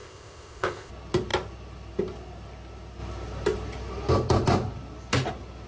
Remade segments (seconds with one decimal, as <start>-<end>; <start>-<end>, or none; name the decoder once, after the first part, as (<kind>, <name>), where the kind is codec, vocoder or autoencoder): 0.0-0.9 (codec, ZipCodec)